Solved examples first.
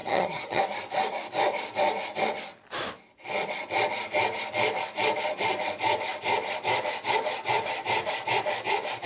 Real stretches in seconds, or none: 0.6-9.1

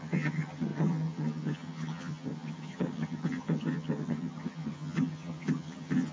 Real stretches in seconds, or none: none

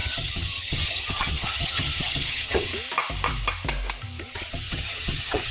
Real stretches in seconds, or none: 2.7-4.2